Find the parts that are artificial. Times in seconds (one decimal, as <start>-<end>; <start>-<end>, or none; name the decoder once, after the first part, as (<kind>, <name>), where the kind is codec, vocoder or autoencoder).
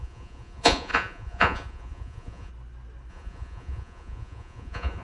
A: 0.0-2.5 (vocoder, Vocos); 3.1-5.0